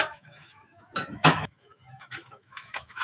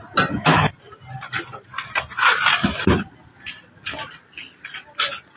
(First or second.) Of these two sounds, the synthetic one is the first